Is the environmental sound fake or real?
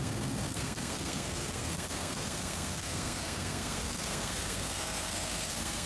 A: fake